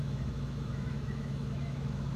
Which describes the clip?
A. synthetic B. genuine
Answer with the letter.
A